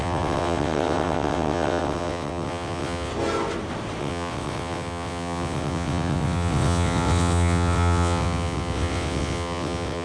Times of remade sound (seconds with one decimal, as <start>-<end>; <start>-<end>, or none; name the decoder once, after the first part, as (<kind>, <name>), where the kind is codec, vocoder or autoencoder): 0.0-3.1 (vocoder, WaveNeXt); 4.0-10.0

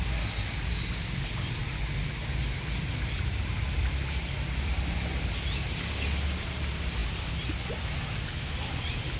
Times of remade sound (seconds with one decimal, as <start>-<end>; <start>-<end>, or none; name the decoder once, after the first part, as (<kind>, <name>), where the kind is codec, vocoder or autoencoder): none

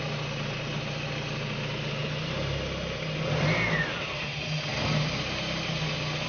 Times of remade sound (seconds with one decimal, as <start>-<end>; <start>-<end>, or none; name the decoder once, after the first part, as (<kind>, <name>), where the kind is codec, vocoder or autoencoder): none

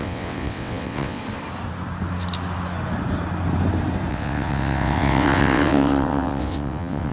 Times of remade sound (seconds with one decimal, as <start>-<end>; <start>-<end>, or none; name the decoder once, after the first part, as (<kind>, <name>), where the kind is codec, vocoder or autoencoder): 0.0-1.2 (vocoder, WaveNeXt); 4.1-7.1

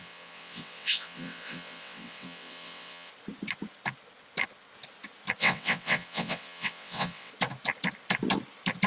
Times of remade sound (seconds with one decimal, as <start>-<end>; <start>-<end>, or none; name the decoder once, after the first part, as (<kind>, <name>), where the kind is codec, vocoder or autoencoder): 0.0-3.1 (vocoder, WaveNeXt); 5.4-7.3

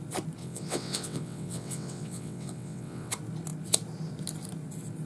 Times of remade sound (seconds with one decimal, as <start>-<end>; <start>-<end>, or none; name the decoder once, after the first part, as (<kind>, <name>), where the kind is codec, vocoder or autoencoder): 0.4-3.1 (vocoder, WaveNeXt)